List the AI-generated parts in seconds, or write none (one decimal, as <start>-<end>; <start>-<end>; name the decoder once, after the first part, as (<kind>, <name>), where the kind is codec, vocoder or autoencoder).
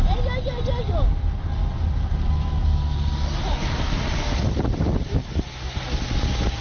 none